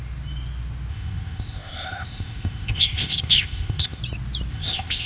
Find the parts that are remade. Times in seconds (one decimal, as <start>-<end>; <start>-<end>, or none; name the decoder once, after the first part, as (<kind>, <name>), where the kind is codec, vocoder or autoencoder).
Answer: 0.9-4.0 (codec, ZipCodec); 4.5-5.1